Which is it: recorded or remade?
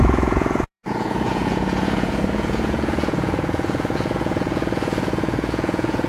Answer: remade